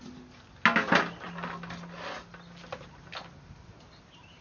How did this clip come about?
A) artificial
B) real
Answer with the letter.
B